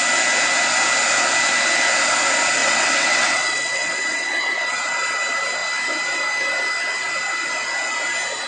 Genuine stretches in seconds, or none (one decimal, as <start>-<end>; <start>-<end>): 0.0-2.6; 4.8-8.5